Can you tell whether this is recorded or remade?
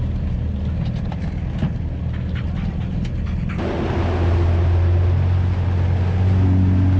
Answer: recorded